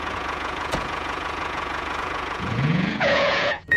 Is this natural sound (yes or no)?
no